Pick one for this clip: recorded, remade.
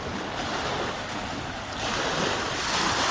recorded